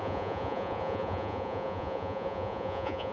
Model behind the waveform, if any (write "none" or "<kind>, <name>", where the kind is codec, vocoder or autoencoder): vocoder, Vocos